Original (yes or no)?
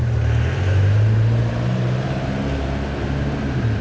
yes